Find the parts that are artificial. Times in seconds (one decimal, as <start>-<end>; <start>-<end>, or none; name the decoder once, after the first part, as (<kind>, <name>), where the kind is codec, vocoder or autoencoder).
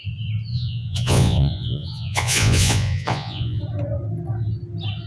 0.5-3.6 (vocoder, Vocos)